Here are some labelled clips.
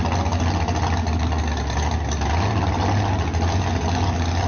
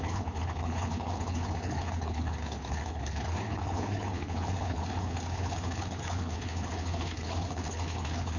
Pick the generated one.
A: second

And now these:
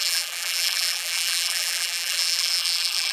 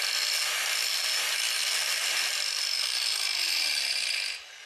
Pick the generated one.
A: first